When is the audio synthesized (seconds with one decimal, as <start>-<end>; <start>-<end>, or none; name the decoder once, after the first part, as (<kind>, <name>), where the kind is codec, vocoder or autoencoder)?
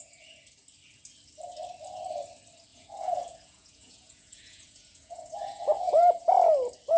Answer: 2.7-6.3 (vocoder, Vocos)